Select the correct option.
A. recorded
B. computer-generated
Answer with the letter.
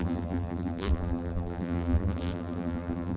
B